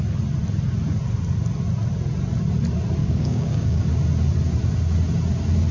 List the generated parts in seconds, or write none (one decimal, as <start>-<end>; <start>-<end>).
3.0-3.8